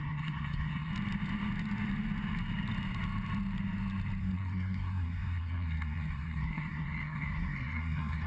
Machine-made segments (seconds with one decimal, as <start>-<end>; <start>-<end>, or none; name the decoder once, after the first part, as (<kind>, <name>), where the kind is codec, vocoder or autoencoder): 0.0-0.9 (codec, SNAC); 4.2-8.3